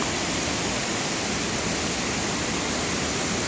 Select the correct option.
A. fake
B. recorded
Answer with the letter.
B